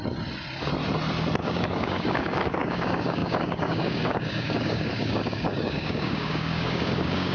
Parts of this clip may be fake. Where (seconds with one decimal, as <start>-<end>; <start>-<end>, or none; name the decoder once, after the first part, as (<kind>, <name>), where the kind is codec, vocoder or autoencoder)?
1.4-7.3 (codec, DAC)

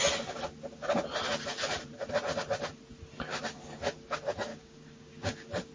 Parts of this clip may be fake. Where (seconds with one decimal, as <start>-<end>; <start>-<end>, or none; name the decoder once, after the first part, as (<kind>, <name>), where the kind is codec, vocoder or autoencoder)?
4.5-5.7 (codec, DAC)

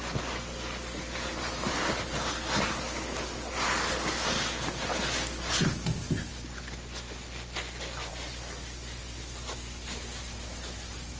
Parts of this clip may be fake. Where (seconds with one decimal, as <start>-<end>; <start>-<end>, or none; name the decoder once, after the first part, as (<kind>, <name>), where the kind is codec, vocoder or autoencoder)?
none

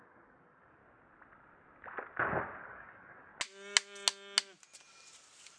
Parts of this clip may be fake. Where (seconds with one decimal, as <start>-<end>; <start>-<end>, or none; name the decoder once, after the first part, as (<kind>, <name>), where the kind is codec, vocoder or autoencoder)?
0.0-0.8 (codec, DAC); 2.6-3.3

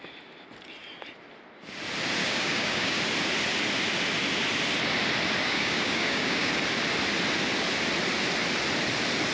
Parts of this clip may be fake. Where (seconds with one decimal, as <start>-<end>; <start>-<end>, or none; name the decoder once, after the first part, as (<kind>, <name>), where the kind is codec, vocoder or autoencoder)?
2.2-3.0 (codec, DAC); 5.4-6.5

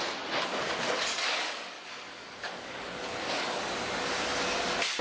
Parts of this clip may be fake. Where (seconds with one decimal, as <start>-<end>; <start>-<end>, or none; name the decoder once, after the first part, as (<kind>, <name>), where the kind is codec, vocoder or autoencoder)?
0.6-3.6 (codec, DAC)